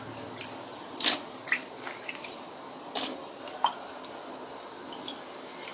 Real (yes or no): yes